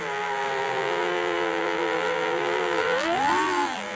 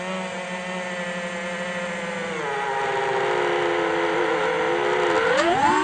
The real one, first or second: second